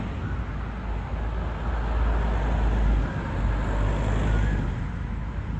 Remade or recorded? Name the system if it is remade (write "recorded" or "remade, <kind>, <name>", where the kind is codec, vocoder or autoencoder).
recorded